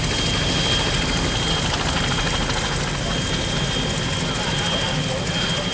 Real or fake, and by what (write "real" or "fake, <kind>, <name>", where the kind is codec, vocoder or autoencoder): real